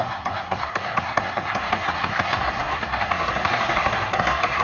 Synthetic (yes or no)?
yes